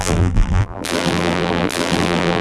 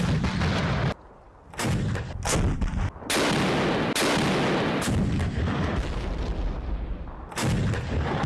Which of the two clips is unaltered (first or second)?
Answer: second